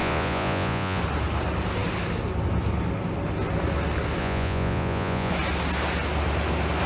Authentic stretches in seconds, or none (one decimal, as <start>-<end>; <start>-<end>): 1.0-4.2; 5.3-6.9